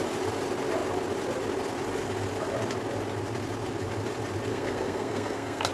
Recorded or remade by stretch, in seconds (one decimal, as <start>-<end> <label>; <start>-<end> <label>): 0.0-4.5 recorded; 4.5-5.7 remade